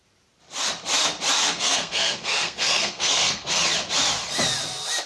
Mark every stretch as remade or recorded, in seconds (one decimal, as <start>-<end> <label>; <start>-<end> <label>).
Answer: 0.0-1.4 recorded; 1.4-3.6 remade; 3.6-5.1 recorded